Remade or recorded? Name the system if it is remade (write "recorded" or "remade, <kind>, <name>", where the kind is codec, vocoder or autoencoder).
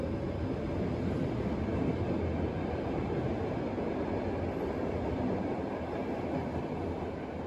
recorded